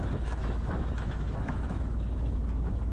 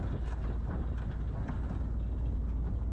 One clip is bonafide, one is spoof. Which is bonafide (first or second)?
second